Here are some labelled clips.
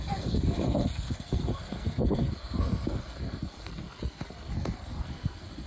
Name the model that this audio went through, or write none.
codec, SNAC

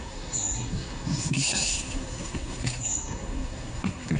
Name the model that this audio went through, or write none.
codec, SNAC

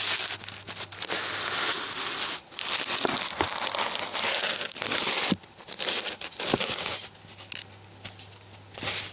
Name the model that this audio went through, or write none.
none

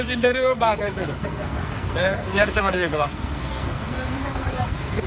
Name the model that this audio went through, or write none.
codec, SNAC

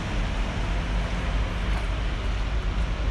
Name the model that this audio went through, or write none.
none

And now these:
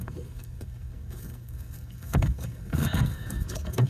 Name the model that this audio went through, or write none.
codec, SNAC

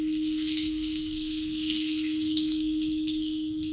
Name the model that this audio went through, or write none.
codec, SNAC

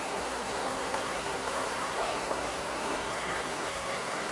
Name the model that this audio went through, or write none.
codec, SNAC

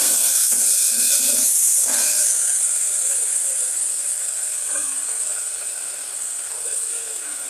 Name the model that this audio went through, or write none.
codec, SNAC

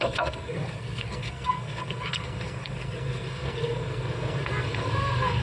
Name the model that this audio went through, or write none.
codec, SNAC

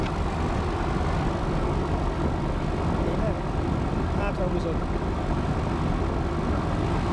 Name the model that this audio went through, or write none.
none